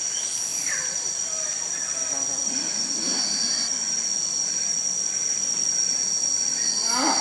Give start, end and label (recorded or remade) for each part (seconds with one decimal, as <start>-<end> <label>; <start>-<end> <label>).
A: 0.0-7.2 recorded